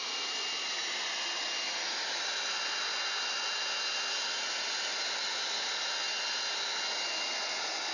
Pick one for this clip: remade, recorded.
recorded